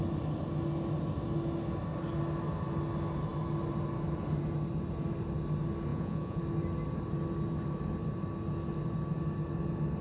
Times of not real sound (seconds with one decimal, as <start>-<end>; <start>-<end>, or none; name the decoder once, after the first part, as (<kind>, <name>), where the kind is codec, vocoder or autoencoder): 5.9-6.4 (vocoder, Vocos)